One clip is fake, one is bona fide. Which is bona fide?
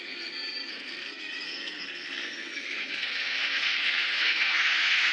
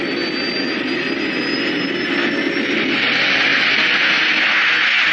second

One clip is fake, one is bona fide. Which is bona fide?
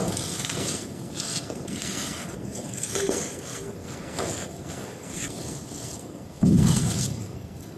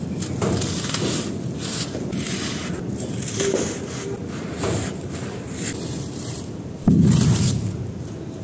second